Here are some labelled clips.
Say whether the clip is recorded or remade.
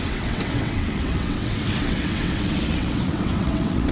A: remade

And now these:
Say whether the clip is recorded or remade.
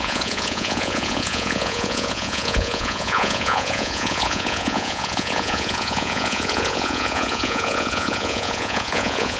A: remade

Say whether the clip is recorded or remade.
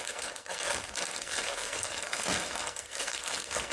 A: remade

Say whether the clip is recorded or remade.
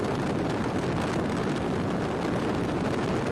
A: recorded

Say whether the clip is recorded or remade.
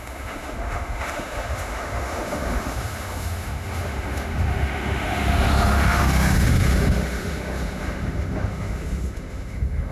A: remade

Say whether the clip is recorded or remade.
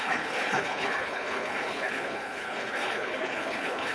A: remade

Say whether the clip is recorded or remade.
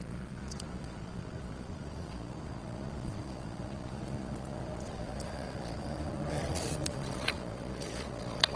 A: remade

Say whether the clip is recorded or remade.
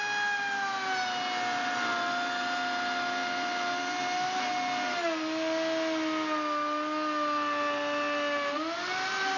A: recorded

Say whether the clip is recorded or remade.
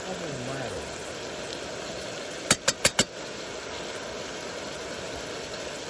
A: recorded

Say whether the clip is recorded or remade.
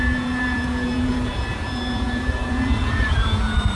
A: remade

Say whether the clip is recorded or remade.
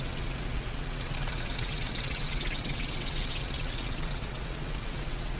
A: remade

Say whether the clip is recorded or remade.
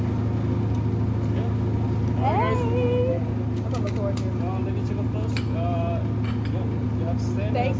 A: recorded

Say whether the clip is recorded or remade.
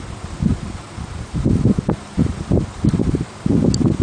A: remade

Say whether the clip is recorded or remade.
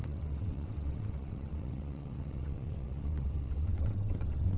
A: remade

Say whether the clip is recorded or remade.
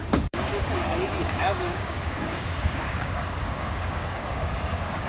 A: remade